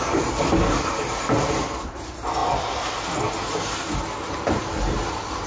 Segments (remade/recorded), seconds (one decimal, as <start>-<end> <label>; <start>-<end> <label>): 0.0-5.5 recorded